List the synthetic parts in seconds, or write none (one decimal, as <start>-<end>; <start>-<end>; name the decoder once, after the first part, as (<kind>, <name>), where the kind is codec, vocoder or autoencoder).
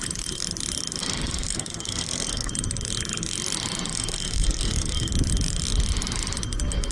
1.0-2.5 (codec, SNAC); 3.9-5.1